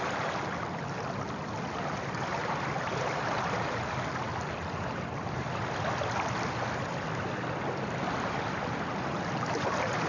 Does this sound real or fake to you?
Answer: real